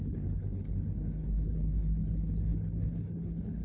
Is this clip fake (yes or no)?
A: yes